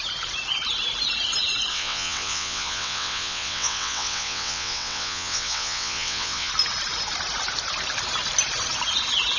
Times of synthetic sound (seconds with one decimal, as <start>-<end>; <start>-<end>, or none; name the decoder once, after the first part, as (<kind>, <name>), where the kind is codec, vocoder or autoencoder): 1.7-6.5 (vocoder, WaveNeXt)